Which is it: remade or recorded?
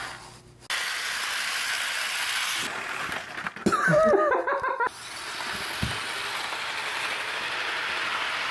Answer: recorded